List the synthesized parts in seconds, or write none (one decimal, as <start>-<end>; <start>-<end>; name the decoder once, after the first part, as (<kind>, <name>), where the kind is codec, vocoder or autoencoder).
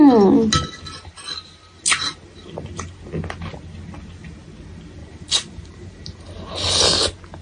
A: 2.4-3.0 (vocoder, BigVGAN v2); 5.0-6.2